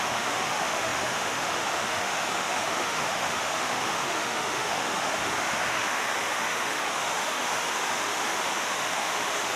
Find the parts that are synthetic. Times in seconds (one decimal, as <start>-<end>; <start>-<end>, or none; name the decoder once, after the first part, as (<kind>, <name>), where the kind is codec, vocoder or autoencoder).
0.0-9.6 (autoencoder, DAC-VAE)